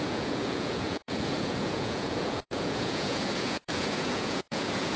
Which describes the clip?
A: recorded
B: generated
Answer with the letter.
B